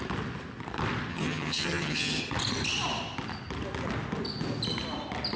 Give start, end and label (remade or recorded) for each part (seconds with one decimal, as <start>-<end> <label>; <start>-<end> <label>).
0.0-1.1 recorded; 1.1-2.2 remade; 2.2-5.4 recorded